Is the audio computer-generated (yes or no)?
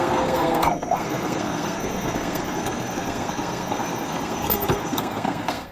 yes